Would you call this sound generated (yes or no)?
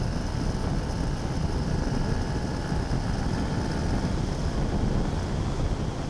no